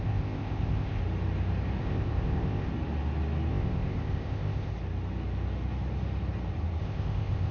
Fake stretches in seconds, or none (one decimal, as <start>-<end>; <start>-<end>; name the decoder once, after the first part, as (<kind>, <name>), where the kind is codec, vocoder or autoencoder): 0.0-1.0 (codec, ZipCodec); 1.8-2.7; 3.5-4.7; 6.8-7.5